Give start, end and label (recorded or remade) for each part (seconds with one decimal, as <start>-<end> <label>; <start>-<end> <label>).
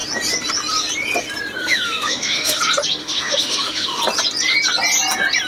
0.0-1.6 recorded; 1.6-2.6 remade; 2.6-3.0 recorded; 3.0-4.0 remade; 4.0-5.5 recorded